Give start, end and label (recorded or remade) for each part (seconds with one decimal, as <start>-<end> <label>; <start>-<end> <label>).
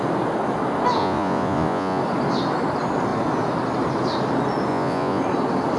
0.0-1.0 recorded; 1.0-2.0 remade; 2.0-4.7 recorded; 4.7-5.2 remade; 5.2-5.8 recorded